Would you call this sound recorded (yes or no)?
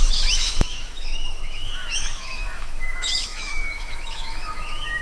no